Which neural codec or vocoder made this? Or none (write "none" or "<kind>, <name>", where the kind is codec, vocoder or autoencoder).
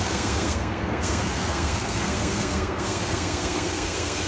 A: codec, SNAC